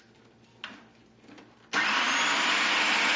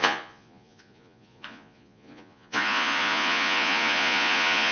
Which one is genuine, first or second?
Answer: first